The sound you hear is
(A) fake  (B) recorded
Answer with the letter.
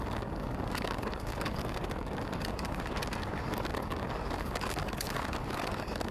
A